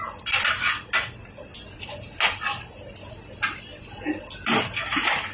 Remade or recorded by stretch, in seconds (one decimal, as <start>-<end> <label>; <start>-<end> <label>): 0.0-5.3 recorded